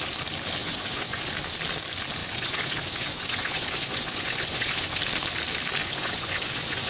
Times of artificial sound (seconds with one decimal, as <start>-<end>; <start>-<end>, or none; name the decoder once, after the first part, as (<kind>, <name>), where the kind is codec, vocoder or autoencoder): 0.6-1.2 (vocoder, Vocos); 2.2-5.0; 5.8-6.9